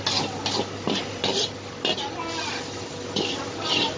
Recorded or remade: recorded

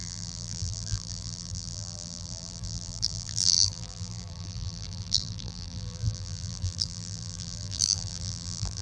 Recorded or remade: remade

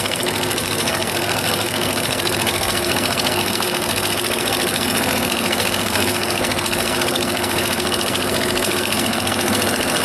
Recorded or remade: remade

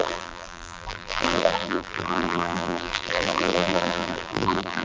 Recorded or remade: remade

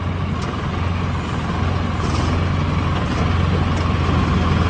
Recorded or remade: recorded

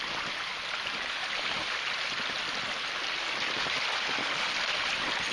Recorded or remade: recorded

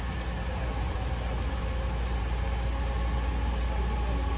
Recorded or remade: recorded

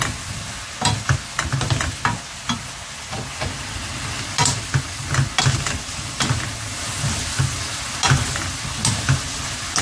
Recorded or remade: recorded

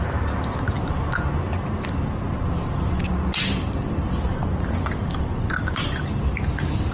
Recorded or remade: recorded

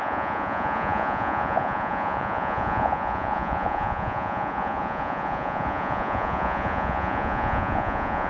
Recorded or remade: remade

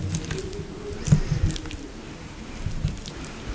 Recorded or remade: recorded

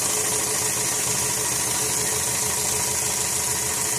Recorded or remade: recorded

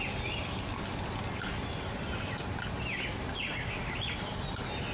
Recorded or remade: recorded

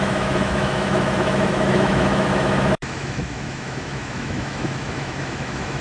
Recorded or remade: remade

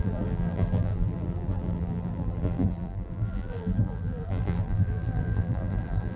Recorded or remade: remade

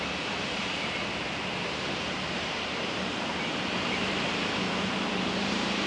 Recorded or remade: remade